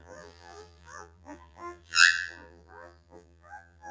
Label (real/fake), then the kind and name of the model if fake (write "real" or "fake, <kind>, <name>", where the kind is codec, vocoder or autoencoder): fake, vocoder, BigVGAN v2